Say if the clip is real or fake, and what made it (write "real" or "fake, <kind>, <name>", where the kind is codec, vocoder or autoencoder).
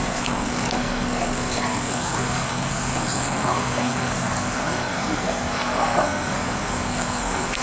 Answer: fake, codec, SNAC